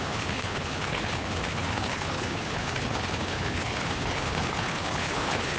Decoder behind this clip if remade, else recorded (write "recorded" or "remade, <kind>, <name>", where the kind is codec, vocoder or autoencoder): remade, codec, HILCodec